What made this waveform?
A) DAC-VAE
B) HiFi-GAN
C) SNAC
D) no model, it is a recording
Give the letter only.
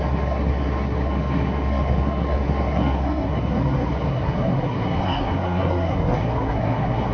C